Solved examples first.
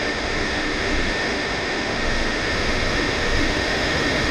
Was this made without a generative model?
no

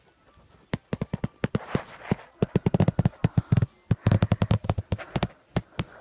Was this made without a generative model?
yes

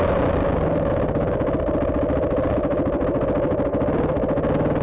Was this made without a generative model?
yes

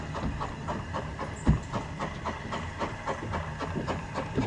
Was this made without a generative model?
yes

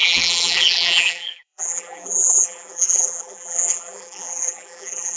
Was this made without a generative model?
no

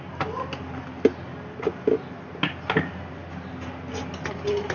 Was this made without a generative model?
yes